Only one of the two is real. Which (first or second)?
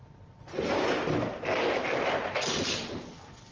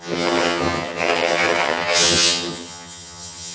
first